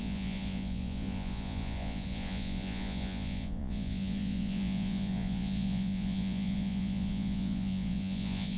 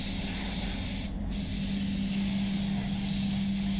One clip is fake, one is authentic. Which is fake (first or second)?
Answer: first